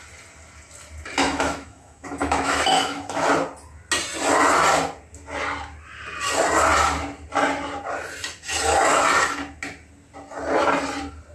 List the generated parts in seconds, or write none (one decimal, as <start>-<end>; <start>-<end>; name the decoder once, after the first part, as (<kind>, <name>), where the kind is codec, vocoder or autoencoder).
1.2-3.3 (autoencoder, DAC-VAE)